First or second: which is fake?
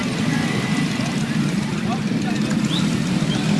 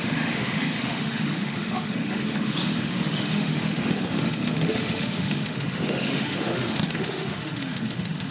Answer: second